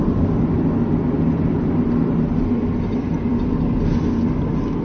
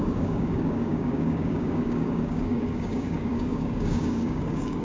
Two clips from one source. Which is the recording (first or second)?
first